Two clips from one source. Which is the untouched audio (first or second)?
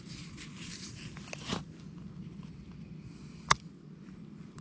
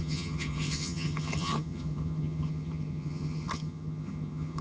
first